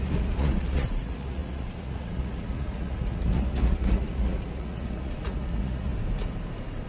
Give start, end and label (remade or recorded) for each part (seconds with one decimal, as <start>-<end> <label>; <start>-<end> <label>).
0.0-5.9 remade; 5.9-6.9 recorded